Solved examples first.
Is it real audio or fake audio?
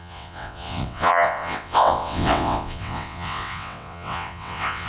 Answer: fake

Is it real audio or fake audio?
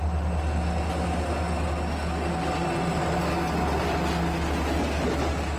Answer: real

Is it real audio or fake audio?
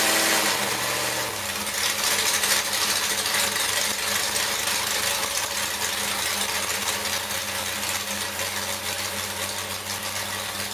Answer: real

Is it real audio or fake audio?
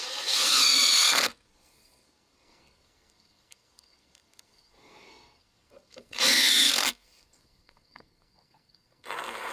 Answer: fake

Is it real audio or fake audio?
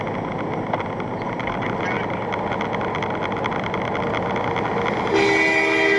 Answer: real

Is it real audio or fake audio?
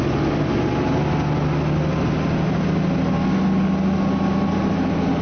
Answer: real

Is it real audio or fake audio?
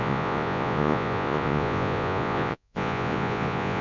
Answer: fake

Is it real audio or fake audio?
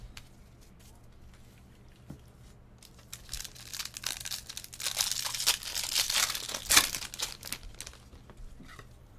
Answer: real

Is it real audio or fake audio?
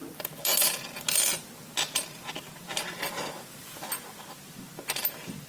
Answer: real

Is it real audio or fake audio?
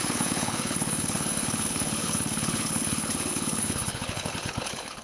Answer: fake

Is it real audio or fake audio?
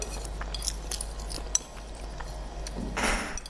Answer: real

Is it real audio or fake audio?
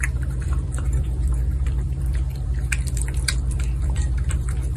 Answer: fake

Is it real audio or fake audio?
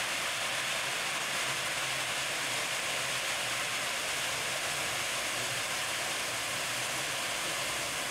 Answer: real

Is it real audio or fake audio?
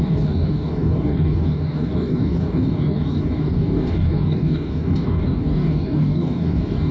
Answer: fake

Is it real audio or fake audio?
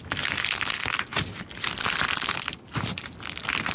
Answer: real